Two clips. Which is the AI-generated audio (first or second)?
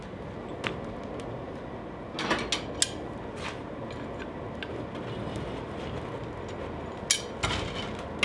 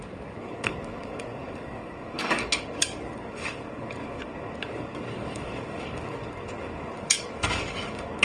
second